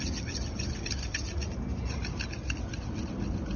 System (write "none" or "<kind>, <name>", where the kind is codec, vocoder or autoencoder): none